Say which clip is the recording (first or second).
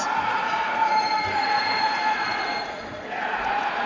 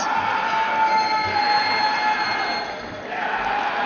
second